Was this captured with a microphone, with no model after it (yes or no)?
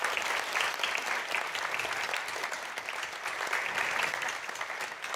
yes